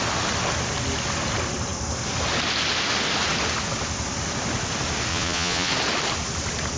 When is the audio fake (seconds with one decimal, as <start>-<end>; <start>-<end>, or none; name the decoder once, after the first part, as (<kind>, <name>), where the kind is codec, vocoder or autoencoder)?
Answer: 5.1-5.7 (vocoder, Vocos)